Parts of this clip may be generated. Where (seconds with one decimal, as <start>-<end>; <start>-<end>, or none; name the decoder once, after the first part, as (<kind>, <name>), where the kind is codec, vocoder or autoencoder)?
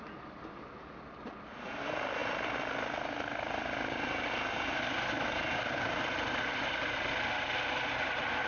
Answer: none